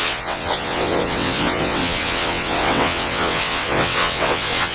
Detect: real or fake fake